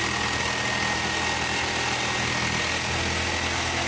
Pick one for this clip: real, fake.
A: real